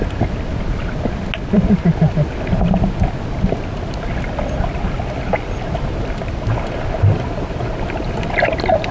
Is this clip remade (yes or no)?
no